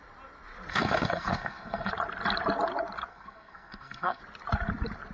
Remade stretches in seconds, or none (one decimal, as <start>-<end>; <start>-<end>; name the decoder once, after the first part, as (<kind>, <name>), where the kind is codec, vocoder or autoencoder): 0.7-1.9 (codec, SNAC); 3.1-4.2